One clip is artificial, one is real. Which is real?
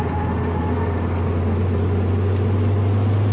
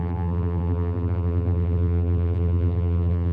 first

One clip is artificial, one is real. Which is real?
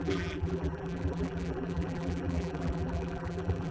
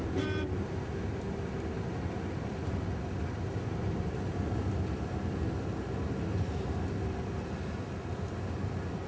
second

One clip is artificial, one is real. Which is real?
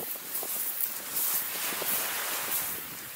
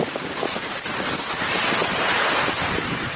first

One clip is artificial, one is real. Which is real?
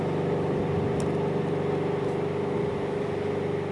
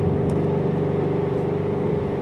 first